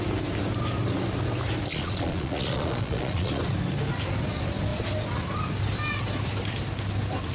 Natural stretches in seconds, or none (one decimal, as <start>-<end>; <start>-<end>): 0.0-1.7; 3.4-7.3